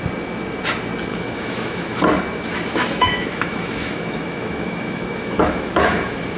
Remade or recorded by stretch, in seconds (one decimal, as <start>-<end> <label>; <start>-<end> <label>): 0.0-1.1 recorded; 1.1-2.0 remade; 2.0-2.5 recorded; 2.5-6.4 remade